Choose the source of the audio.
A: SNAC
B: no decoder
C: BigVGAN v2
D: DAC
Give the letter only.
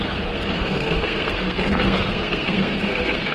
A